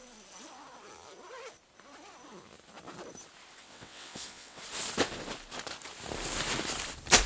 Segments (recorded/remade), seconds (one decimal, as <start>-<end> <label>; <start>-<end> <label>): 0.0-3.6 recorded; 3.6-4.6 remade; 4.6-7.3 recorded